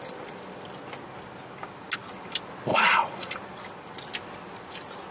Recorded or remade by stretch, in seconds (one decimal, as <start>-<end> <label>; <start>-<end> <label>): 0.0-2.7 recorded; 2.7-3.3 remade; 3.3-5.1 recorded